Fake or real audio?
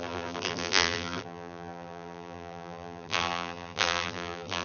fake